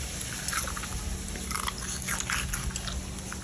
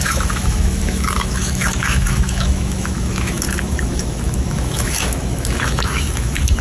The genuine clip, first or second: first